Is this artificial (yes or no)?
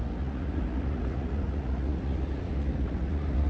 yes